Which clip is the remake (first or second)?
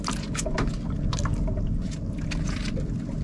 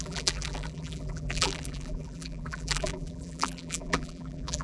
second